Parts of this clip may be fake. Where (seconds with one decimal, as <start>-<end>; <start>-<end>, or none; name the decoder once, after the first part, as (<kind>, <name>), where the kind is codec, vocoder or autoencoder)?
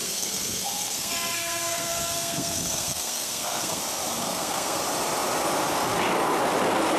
0.0-3.8 (codec, SNAC); 4.2-4.8